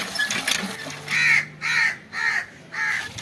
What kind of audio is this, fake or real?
real